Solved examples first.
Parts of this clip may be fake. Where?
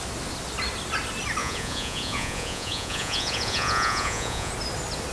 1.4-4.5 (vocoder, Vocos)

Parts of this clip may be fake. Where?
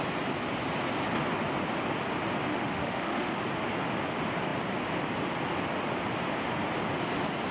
2.5-3.4 (autoencoder, DAC-VAE)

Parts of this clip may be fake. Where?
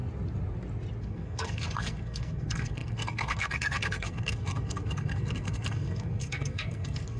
1.0-7.2 (codec, SNAC)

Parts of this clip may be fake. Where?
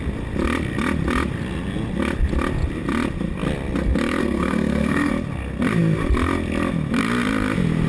4.2-5.1 (codec, SNAC)